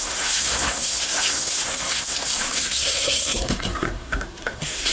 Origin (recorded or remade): remade